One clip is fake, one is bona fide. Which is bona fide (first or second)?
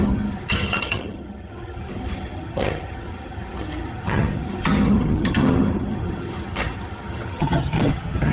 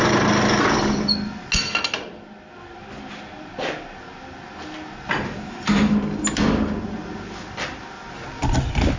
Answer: second